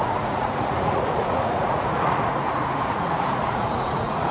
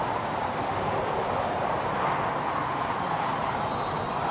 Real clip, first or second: second